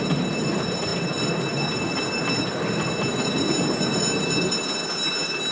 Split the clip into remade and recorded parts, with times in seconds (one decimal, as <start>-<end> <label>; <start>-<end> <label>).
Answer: 0.0-5.5 recorded